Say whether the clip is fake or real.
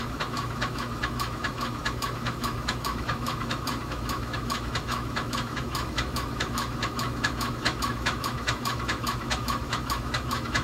fake